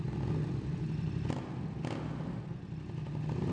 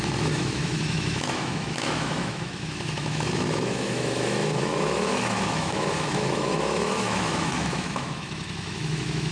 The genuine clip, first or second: first